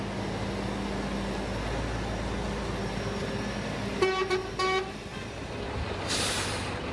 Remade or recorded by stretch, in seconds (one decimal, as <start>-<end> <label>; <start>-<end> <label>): 0.0-4.4 recorded; 4.4-6.4 remade; 6.4-6.9 recorded

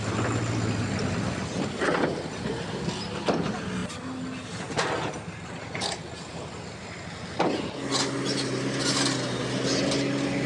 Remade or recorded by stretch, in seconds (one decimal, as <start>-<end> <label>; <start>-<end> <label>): 0.0-10.5 recorded

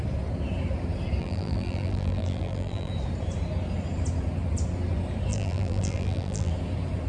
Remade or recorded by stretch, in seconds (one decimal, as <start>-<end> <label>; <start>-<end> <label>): 0.0-1.2 recorded; 1.2-2.9 remade; 2.9-5.3 recorded; 5.3-6.5 remade; 6.5-7.1 recorded

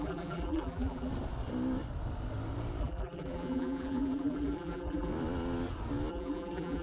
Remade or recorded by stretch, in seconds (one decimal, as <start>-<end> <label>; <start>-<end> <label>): 0.0-1.1 remade; 1.1-2.8 recorded; 2.8-5.1 remade; 5.1-6.1 recorded; 6.1-6.8 remade

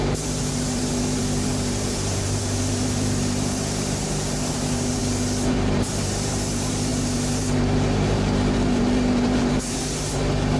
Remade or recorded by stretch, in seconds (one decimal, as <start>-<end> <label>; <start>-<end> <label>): 0.0-5.0 remade; 5.0-5.5 recorded; 5.5-10.6 remade

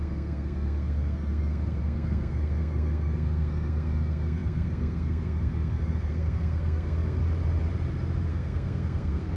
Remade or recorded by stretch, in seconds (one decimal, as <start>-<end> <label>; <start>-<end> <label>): 0.0-7.2 remade; 7.2-8.3 recorded; 8.3-9.4 remade

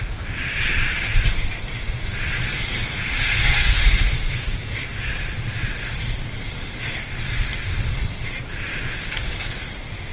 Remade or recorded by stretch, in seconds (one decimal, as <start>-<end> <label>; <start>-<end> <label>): 0.0-2.7 recorded; 2.7-5.1 remade; 5.1-8.7 recorded; 8.7-9.6 remade; 9.6-10.1 recorded

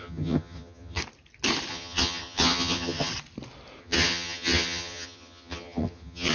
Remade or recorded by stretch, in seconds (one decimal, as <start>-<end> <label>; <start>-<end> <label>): 0.0-1.0 remade; 1.0-1.7 recorded; 1.7-3.1 remade; 3.1-3.8 recorded; 3.8-6.3 remade